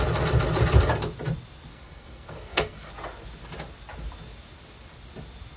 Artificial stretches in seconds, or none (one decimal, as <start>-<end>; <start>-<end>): 1.7-2.9